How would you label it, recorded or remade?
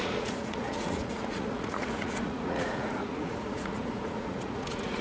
remade